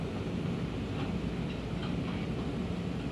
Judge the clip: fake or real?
real